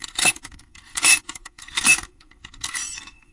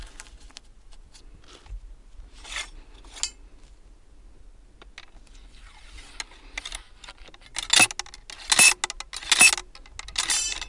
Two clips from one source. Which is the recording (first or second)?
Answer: second